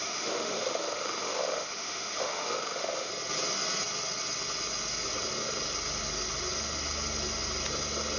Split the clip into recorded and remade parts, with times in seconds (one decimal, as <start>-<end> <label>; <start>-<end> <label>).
0.0-3.1 remade; 3.1-8.2 recorded

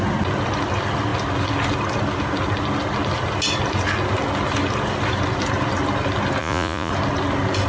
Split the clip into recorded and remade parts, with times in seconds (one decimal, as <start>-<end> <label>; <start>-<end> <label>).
0.0-6.4 recorded; 6.4-6.9 remade; 6.9-7.7 recorded

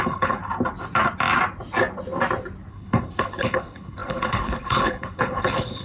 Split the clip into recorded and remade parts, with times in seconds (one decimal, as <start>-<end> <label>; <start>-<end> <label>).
0.0-0.4 remade; 0.4-2.7 recorded; 2.7-5.8 remade

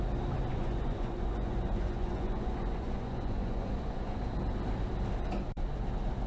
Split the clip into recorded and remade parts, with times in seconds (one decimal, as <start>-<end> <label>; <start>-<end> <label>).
0.0-0.5 recorded; 0.5-4.2 remade; 4.2-6.3 recorded

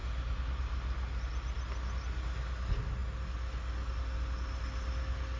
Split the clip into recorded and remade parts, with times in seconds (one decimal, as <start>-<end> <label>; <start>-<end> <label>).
0.0-5.4 recorded

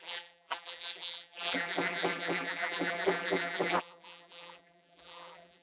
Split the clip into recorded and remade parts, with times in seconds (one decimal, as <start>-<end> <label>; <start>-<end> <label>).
0.0-5.6 remade

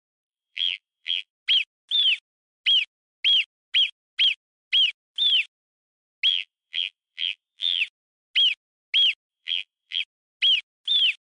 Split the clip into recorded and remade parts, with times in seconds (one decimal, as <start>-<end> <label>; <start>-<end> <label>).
0.0-1.3 remade; 1.3-6.3 recorded; 6.3-7.8 remade; 7.8-9.3 recorded; 9.3-10.0 remade; 10.0-11.3 recorded